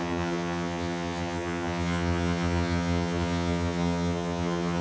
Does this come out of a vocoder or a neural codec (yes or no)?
yes